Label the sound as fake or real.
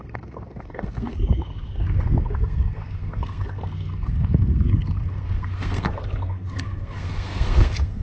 fake